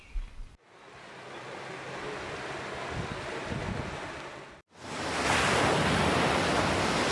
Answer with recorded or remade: recorded